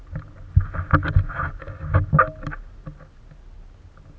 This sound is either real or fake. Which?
real